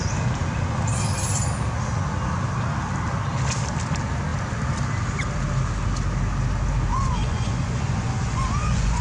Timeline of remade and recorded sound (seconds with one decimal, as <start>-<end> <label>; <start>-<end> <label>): 0.0-6.9 recorded; 6.9-9.0 remade